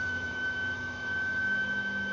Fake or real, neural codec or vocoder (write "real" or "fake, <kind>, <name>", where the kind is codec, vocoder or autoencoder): fake, autoencoder, DAC-VAE